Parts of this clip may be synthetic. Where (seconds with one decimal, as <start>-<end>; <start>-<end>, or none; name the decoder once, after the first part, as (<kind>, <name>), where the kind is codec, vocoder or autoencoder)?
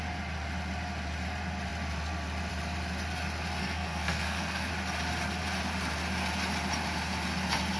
3.6-4.7 (codec, SNAC)